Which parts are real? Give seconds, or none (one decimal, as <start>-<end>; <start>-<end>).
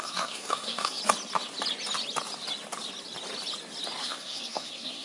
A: 1.0-4.0